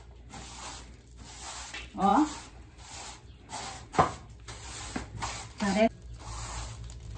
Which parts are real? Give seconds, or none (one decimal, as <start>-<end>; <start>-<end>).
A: 0.0-2.1; 3.1-7.2